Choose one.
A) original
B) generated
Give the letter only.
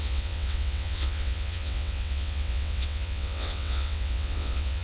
B